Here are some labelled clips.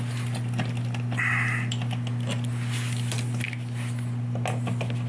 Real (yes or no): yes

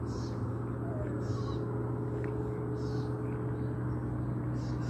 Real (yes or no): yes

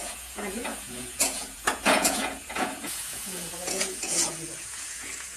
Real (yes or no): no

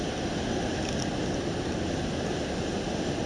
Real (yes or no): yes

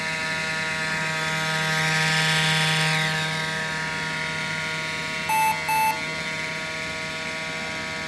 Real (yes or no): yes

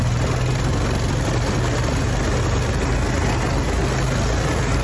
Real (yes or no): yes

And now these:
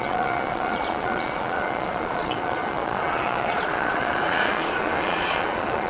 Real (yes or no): no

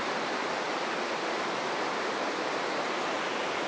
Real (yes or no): yes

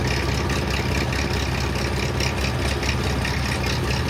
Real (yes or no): yes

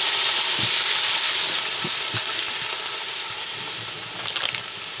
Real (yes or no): yes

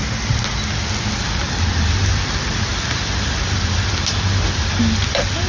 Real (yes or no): yes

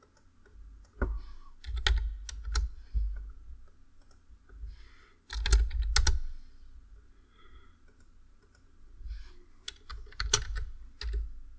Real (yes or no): yes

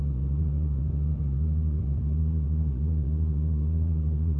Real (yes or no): no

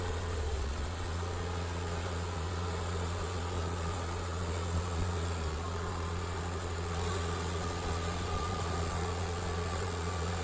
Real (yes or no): no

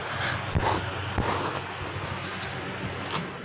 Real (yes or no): yes